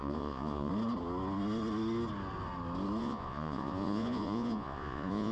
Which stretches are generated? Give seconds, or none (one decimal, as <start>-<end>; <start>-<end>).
0.0-0.7; 3.0-5.3